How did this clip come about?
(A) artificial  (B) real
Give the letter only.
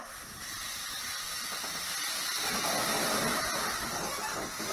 B